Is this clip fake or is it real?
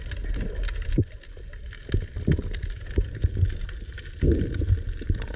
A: real